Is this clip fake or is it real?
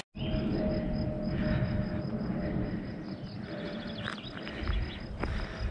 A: real